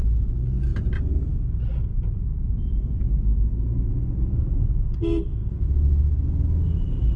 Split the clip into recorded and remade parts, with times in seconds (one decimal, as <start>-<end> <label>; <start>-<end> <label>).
0.0-0.7 recorded; 0.7-1.3 remade; 1.3-1.9 recorded; 1.9-3.6 remade; 3.6-7.2 recorded